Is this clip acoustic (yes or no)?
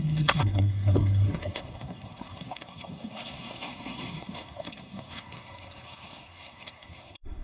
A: no